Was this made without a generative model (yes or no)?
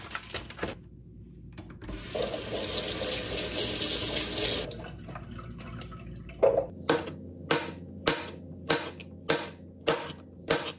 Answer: yes